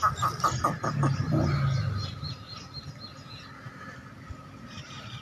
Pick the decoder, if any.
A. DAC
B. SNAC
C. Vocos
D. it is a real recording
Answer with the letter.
D